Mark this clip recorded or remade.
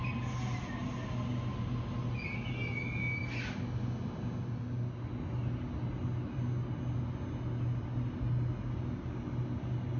recorded